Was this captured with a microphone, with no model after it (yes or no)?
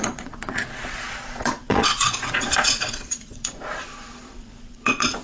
no